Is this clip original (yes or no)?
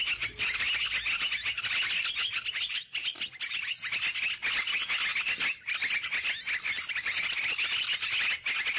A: yes